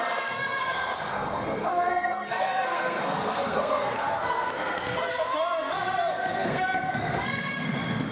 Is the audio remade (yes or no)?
yes